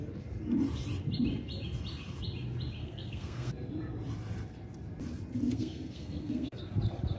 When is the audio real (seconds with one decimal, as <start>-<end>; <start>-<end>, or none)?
0.0-2.8; 3.5-5.5; 6.6-7.2